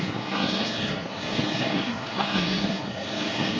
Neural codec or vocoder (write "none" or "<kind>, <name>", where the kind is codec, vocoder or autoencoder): codec, SNAC